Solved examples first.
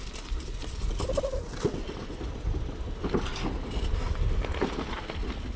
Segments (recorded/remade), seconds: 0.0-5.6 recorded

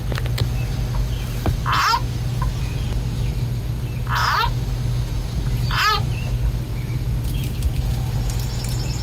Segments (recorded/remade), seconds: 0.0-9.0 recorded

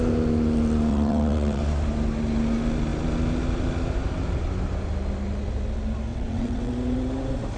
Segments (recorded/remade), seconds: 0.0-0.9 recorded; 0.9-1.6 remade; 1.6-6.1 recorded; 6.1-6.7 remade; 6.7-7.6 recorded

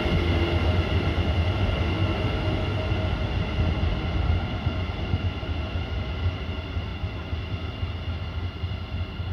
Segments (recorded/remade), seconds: 0.0-9.3 recorded

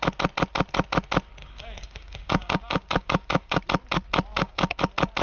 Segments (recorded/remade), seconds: 0.0-1.4 recorded; 1.4-3.6 remade; 3.6-4.3 recorded; 4.3-4.8 remade; 4.8-5.2 recorded

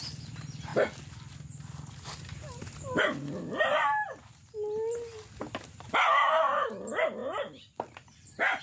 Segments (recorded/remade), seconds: 0.0-8.6 recorded

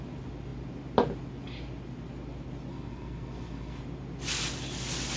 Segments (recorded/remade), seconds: 0.0-2.7 recorded; 2.7-3.8 remade; 3.8-5.2 recorded

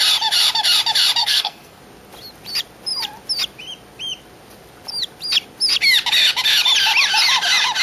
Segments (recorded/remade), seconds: 0.0-1.2 recorded; 1.2-1.8 remade; 1.8-7.8 recorded